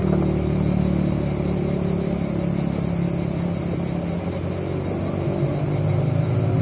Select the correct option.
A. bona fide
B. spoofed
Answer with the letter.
A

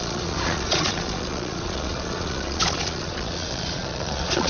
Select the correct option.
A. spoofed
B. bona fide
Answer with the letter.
A